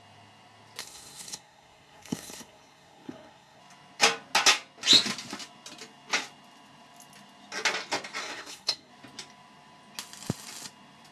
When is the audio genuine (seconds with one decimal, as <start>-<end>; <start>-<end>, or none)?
0.0-0.8; 3.6-8.2; 8.9-11.1